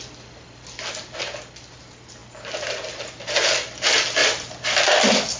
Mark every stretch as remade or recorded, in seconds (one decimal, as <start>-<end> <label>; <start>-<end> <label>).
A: 0.0-5.4 recorded